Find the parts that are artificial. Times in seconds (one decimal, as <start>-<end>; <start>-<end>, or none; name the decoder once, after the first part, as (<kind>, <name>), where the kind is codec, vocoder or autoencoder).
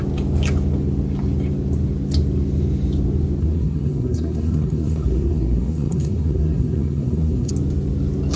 3.4-7.5 (codec, SNAC)